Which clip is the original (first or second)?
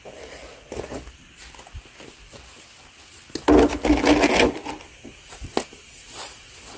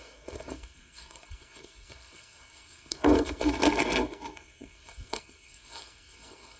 first